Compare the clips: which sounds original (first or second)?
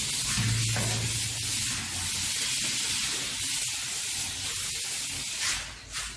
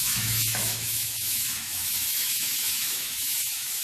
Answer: first